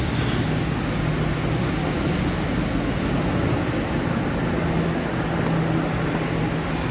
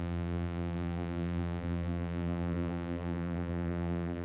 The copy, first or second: second